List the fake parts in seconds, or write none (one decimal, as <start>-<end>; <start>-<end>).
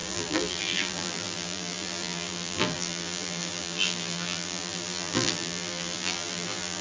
0.0-6.8